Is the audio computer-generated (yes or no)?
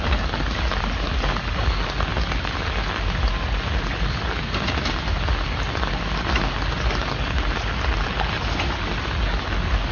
no